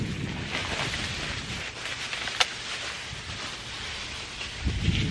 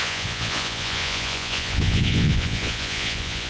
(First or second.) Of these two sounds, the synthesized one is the second